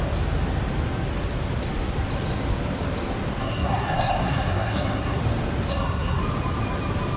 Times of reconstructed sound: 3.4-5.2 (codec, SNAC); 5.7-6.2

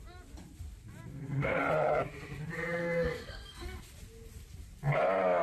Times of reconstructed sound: 1.1-1.6 (codec, SNAC); 2.8-3.8

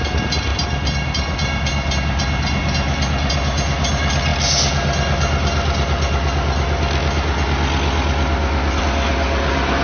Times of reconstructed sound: none

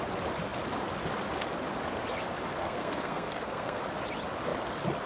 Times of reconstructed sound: 2.6-3.8 (codec, SNAC)

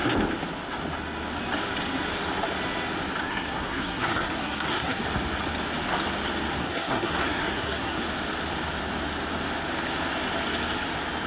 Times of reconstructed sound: 3.2-5.0 (codec, SNAC); 6.6-8.0

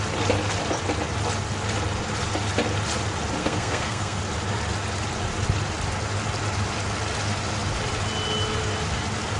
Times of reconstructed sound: 3.4-4.2 (codec, SNAC)

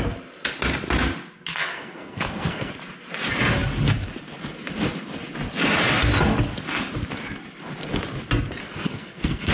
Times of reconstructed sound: 1.5-2.7 (codec, SNAC); 8.6-9.5

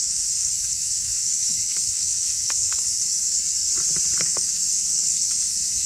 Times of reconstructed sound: 0.0-3.7 (codec, SNAC); 4.2-5.9